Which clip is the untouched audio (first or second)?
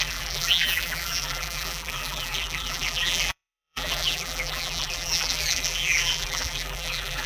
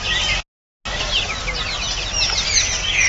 second